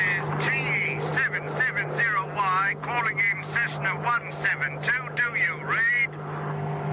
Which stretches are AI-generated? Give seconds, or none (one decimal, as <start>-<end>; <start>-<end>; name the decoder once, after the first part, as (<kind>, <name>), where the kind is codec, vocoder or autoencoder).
none